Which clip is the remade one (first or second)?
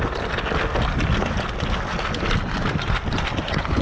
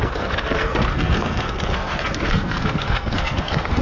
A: second